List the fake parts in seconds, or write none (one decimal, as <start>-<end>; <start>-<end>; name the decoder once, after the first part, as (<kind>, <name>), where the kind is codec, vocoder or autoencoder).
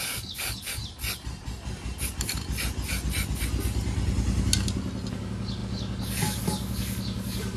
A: 0.0-0.8 (codec, DAC); 5.1-7.6